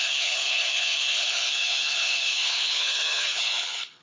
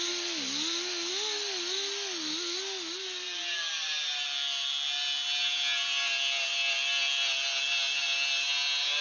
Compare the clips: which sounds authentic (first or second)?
second